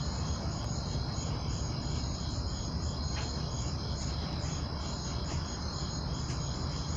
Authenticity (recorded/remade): remade